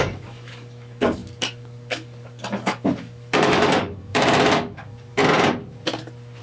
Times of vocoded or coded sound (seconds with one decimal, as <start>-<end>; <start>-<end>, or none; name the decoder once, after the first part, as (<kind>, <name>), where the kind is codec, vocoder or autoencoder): 0.0-5.2 (codec, DAC)